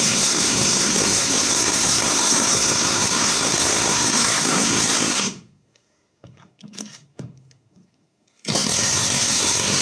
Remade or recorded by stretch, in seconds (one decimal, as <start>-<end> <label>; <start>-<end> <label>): 0.0-9.8 remade